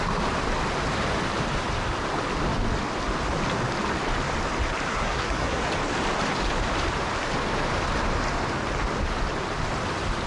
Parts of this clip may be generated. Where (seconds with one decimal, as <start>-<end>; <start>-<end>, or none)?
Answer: 4.9-5.6

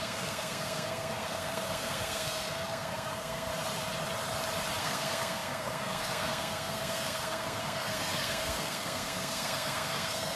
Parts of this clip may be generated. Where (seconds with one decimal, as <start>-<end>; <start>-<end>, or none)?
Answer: 0.0-3.5; 4.8-10.4

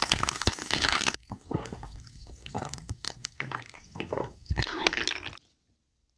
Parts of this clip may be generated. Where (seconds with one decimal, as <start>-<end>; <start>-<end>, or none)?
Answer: 0.0-5.0